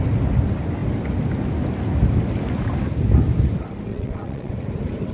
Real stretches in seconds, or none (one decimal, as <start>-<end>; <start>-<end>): 0.0-3.9; 4.5-5.1